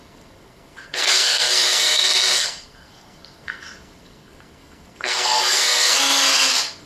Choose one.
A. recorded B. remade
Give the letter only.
B